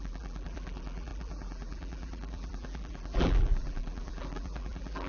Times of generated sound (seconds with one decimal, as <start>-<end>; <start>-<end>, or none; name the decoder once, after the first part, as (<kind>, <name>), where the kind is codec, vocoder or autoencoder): 0.0-5.1 (vocoder, BigVGAN v2)